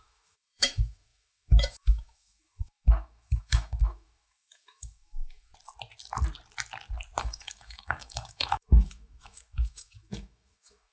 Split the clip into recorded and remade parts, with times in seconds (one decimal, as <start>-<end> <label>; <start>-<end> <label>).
0.0-5.5 remade; 5.5-7.2 recorded; 7.2-10.9 remade